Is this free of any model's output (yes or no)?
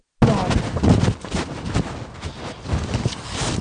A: yes